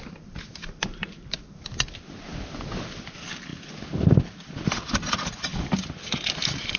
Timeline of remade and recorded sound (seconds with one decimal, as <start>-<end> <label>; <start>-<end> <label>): 0.0-6.8 recorded